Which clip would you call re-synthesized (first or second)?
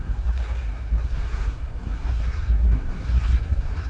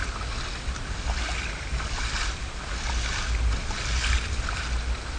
first